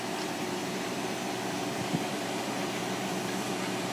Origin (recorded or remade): remade